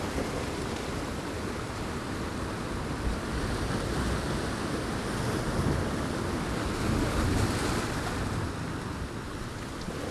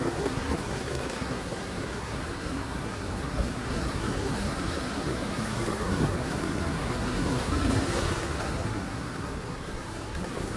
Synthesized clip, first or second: second